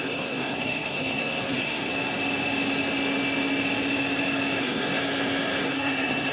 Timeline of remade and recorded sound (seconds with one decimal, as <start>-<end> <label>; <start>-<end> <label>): 0.0-1.9 remade; 1.9-4.6 recorded; 4.6-5.0 remade; 5.0-5.6 recorded; 5.6-6.3 remade